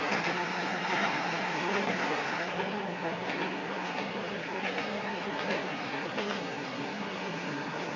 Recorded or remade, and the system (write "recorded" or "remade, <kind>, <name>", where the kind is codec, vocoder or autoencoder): remade, codec, SNAC